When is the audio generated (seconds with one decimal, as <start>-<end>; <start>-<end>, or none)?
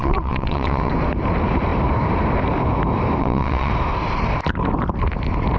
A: 0.0-0.9; 3.2-3.7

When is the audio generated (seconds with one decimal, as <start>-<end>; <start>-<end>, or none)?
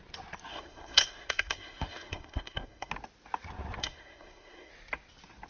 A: 0.5-2.9; 3.8-4.7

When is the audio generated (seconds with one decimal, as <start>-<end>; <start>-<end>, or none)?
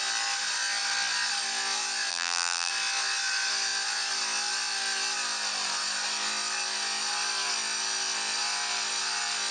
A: 2.1-2.7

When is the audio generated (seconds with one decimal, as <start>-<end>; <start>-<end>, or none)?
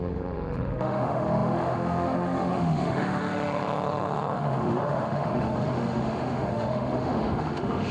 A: 0.0-7.9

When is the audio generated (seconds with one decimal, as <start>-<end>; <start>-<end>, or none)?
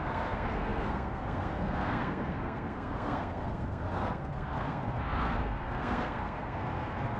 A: 0.0-7.2